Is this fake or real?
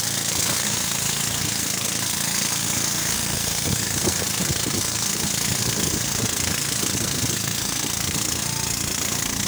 fake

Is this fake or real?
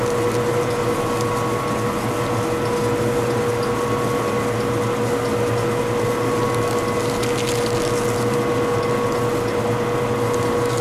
real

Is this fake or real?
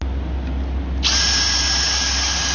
real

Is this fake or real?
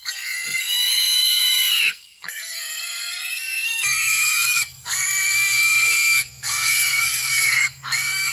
fake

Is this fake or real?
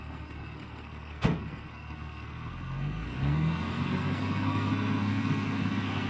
fake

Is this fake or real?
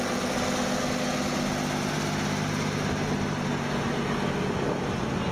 real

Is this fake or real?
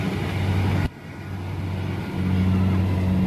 real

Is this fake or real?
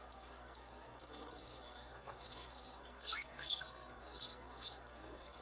fake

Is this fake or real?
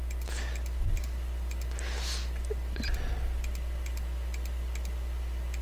real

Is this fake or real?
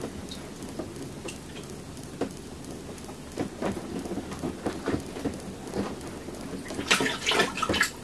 real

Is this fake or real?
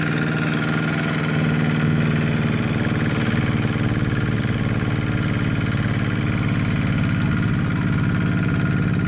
real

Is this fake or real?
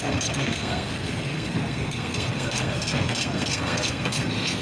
fake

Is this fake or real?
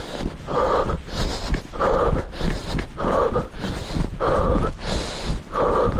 real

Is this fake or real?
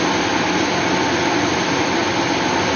real